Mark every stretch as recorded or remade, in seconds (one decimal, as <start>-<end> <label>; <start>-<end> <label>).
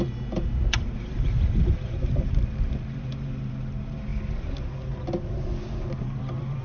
0.0-4.1 remade; 4.1-6.0 recorded; 6.0-6.6 remade